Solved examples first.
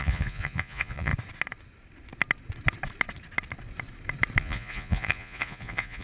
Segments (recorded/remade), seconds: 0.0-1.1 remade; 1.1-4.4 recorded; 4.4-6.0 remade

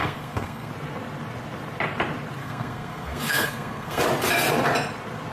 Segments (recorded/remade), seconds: 0.0-0.7 remade; 0.7-2.4 recorded; 2.4-4.0 remade; 4.0-5.3 recorded

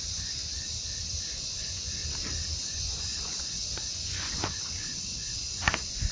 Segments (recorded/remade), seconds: 0.0-0.5 remade; 0.5-1.1 recorded; 1.1-2.0 remade; 2.0-2.6 recorded; 2.6-6.1 remade

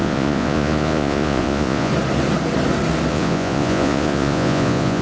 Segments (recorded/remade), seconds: 0.0-1.9 remade; 1.9-3.1 recorded; 3.1-5.0 remade

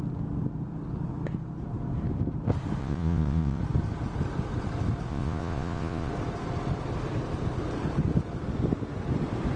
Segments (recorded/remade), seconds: 0.0-2.8 recorded; 2.8-3.6 remade; 3.6-5.1 recorded; 5.1-6.1 remade; 6.1-9.6 recorded

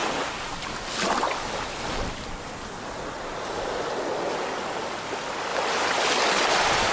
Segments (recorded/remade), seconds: 0.0-6.9 recorded

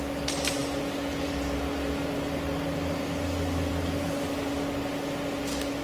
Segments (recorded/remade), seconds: 0.0-5.8 recorded